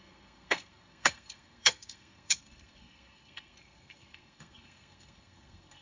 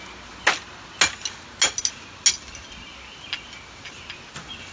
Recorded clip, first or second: second